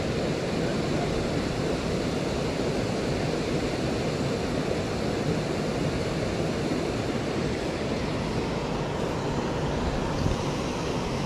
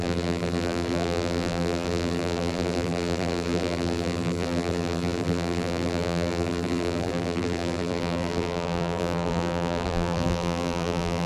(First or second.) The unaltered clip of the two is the first